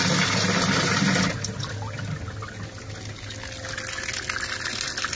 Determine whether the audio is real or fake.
real